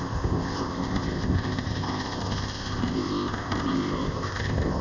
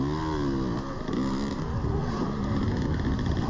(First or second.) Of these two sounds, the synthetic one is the first